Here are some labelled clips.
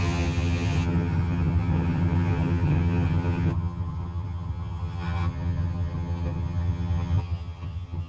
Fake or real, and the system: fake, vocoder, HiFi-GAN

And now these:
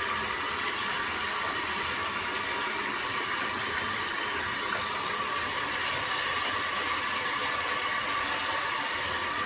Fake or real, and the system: fake, vocoder, BigVGAN v2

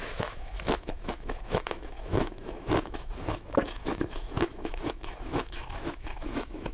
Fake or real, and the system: fake, autoencoder, DAC-VAE